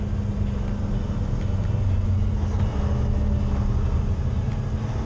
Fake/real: real